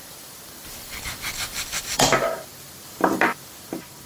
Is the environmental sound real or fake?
fake